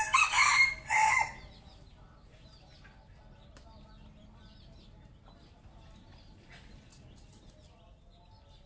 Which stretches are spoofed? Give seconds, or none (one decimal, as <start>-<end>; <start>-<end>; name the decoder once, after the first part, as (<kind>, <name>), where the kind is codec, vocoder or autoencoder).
none